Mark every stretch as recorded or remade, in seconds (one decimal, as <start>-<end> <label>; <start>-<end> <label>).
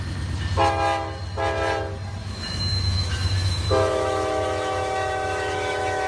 0.0-2.2 recorded; 2.2-6.1 remade